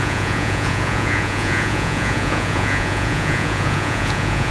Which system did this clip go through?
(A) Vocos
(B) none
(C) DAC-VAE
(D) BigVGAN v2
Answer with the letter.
A